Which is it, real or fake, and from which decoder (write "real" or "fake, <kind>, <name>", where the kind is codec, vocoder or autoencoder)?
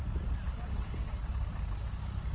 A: real